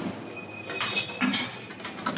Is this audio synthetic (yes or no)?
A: no